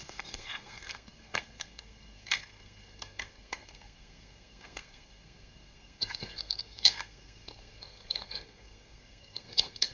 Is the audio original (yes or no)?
no